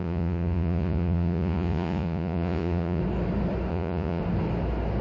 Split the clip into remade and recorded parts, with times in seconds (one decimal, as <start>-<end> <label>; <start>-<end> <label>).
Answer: 0.0-3.0 remade; 3.0-3.7 recorded; 3.7-4.2 remade; 4.2-5.0 recorded

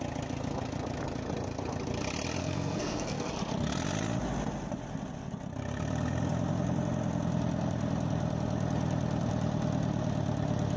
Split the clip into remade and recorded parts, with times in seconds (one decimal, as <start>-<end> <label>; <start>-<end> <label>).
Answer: 0.0-2.4 recorded; 2.4-3.3 remade; 3.3-10.8 recorded